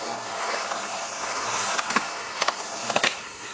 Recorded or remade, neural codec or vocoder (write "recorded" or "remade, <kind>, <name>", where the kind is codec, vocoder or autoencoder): remade, codec, SNAC